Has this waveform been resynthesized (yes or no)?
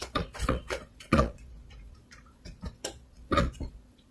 yes